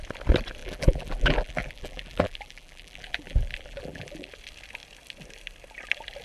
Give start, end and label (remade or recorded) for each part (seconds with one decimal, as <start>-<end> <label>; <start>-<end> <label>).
0.0-0.6 recorded; 0.6-4.3 remade; 4.3-6.2 recorded